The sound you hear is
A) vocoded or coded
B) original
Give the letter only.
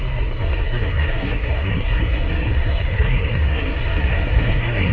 A